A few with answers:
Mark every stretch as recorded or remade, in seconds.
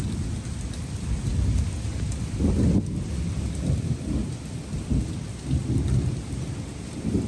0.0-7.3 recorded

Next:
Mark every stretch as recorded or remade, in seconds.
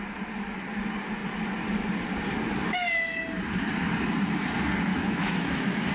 0.0-4.9 recorded; 4.9-5.9 remade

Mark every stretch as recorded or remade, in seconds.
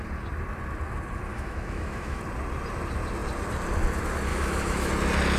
0.0-1.3 recorded; 1.3-2.2 remade; 2.2-4.3 recorded; 4.3-4.9 remade; 4.9-5.4 recorded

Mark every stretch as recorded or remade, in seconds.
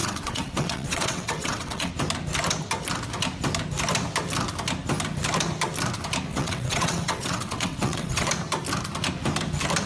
0.0-1.9 remade; 1.9-6.3 recorded; 6.3-8.3 remade; 8.3-9.9 recorded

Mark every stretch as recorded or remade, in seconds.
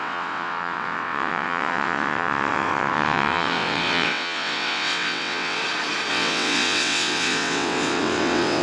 0.0-5.6 remade; 5.6-6.1 recorded; 6.1-8.6 remade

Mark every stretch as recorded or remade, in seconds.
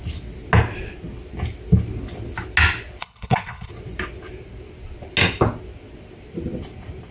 0.0-3.0 recorded; 3.0-3.7 remade; 3.7-7.1 recorded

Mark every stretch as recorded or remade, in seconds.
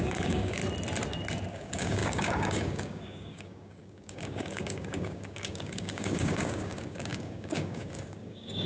0.0-0.6 remade; 0.6-1.5 recorded; 1.5-8.7 remade